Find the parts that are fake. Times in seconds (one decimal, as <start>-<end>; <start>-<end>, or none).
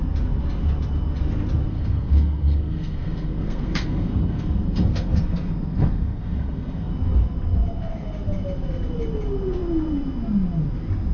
1.7-5.2; 5.7-6.9